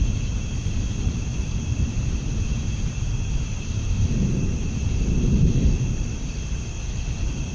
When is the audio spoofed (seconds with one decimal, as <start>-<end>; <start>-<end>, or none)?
0.0-7.5